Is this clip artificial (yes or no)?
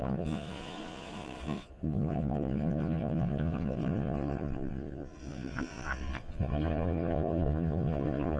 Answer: yes